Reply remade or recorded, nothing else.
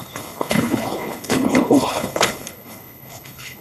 remade